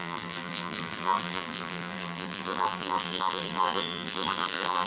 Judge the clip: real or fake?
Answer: fake